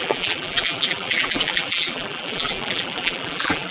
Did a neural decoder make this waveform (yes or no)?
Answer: yes